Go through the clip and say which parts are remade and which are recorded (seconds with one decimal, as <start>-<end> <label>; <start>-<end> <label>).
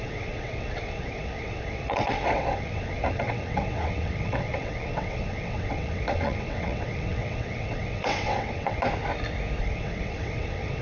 0.0-8.8 remade; 8.8-9.6 recorded; 9.6-10.8 remade